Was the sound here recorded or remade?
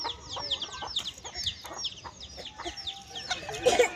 recorded